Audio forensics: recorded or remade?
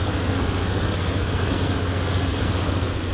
remade